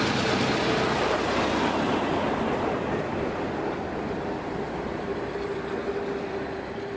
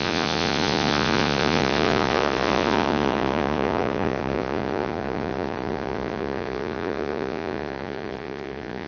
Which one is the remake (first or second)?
second